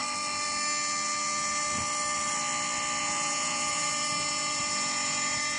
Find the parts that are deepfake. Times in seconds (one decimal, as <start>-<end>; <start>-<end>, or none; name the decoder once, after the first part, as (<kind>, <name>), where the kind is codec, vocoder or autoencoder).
3.0-5.6 (vocoder, Vocos)